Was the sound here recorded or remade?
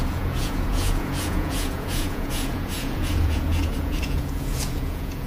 remade